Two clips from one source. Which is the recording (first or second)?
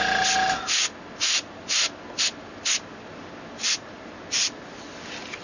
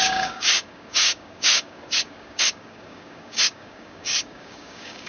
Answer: first